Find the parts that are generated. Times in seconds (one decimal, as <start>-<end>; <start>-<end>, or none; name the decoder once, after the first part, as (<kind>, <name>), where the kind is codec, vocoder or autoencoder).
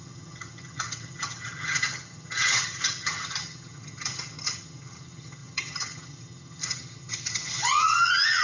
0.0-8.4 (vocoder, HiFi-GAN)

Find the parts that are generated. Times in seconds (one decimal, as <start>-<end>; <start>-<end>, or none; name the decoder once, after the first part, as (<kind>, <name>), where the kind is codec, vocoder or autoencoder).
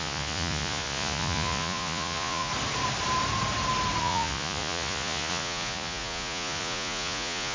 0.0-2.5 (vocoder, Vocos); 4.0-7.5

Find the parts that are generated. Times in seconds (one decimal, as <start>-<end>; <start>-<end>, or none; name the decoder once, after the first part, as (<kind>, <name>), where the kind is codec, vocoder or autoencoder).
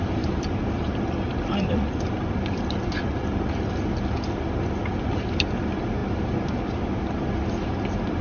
none